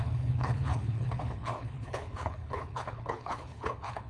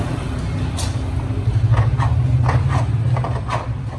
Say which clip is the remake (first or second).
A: first